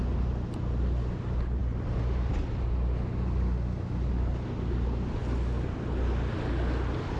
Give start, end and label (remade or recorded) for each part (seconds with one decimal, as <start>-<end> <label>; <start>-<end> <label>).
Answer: 0.0-1.6 recorded; 1.6-2.5 remade; 2.5-7.2 recorded